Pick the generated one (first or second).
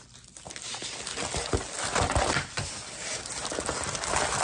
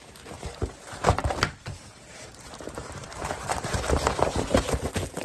second